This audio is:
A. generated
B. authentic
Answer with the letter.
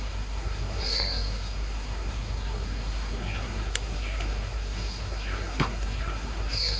A